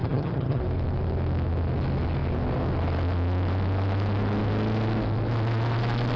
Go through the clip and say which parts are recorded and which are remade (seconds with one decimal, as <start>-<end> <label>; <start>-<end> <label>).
0.0-0.6 remade; 0.6-6.2 recorded